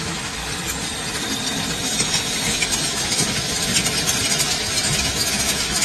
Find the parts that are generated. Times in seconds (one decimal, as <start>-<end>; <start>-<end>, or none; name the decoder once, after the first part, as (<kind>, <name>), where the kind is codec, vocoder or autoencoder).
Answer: 0.0-0.4 (autoencoder, DAC-VAE); 1.8-3.7; 4.4-5.8